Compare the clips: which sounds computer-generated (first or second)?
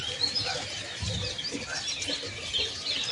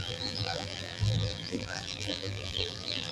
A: second